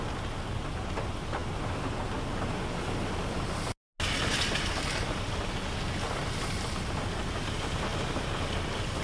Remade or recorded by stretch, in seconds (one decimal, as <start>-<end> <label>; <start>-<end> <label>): 0.0-9.0 recorded